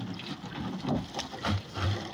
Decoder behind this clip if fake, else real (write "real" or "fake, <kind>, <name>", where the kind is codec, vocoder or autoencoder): real